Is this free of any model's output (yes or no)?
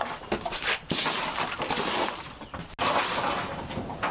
yes